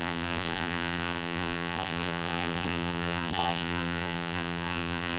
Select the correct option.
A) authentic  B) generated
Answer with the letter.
B